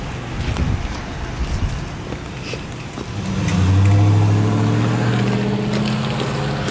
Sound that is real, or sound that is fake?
real